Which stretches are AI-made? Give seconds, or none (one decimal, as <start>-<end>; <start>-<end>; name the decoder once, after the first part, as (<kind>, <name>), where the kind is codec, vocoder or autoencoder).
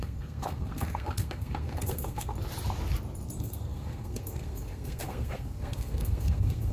0.0-2.3 (codec, SNAC); 3.4-6.7